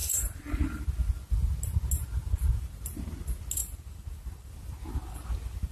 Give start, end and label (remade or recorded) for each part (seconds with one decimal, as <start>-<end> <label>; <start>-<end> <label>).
0.0-0.8 remade; 0.8-3.6 recorded; 3.6-4.5 remade; 4.5-5.7 recorded